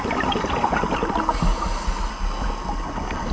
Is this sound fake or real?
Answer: real